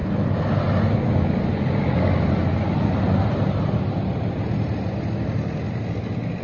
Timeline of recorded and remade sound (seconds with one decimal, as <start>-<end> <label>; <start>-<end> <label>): 0.0-6.4 recorded